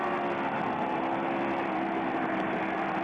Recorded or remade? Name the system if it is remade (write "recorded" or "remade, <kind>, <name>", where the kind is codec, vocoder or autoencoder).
recorded